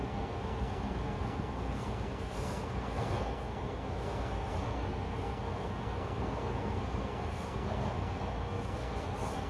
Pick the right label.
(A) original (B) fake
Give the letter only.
B